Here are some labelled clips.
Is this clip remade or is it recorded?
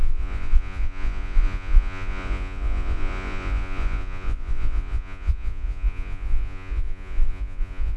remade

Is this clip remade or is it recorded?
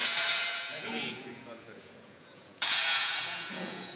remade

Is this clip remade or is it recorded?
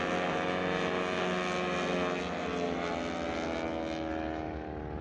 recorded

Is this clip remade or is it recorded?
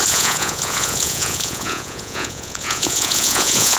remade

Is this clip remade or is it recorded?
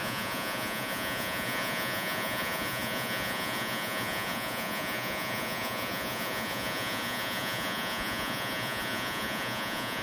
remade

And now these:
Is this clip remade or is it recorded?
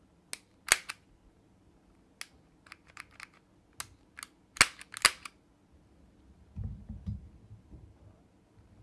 recorded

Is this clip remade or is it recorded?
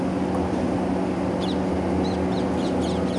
recorded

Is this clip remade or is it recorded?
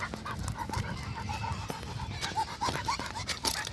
recorded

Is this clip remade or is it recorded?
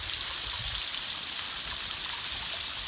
recorded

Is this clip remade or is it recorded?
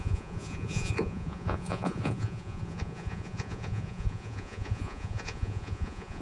remade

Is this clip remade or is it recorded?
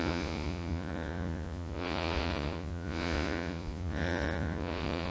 remade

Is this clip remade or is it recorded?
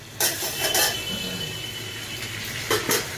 recorded